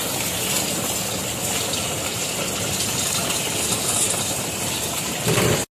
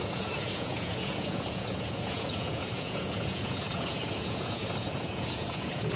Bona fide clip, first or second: first